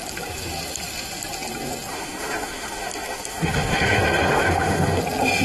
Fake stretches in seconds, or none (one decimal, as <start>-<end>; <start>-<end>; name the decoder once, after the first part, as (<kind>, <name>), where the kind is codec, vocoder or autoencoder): 1.9-5.0 (autoencoder, DAC-VAE)